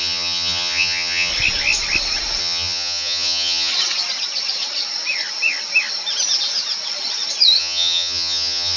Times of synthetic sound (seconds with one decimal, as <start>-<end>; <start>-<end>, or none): 0.0-1.3; 2.4-3.7; 7.6-8.8